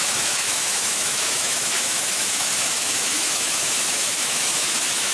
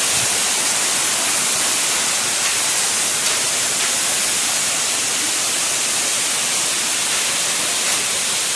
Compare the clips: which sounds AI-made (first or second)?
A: first